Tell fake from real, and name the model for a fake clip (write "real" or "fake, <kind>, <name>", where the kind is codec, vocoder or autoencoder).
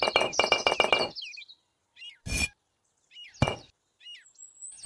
real